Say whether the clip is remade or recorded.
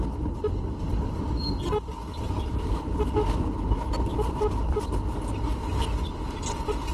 recorded